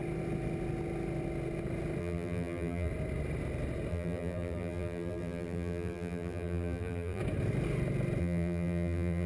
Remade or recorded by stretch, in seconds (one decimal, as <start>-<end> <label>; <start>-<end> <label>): 0.0-2.0 recorded; 2.0-2.9 remade; 2.9-3.9 recorded; 3.9-7.2 remade; 7.2-8.2 recorded; 8.2-9.3 remade